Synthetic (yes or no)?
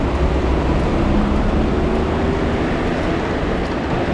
no